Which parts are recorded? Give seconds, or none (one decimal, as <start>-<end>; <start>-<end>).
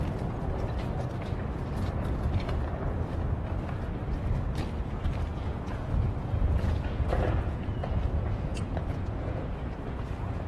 0.0-5.3